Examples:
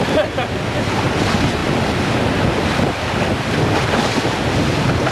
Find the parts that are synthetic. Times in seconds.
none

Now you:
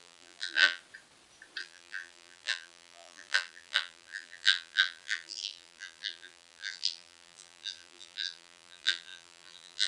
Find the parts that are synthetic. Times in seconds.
0.0-0.8; 1.6-9.9

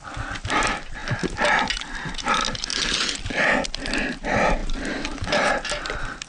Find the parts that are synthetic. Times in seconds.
none

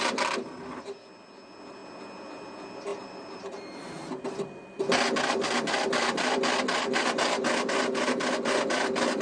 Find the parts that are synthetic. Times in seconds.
2.9-4.2

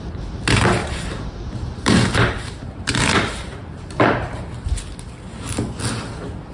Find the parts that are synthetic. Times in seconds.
0.8-4.7

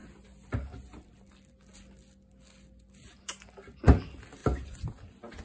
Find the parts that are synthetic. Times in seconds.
none

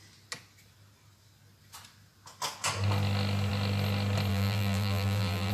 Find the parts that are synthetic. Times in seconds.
4.3-5.5